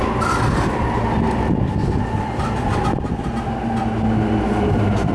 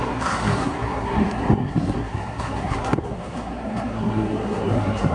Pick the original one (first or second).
first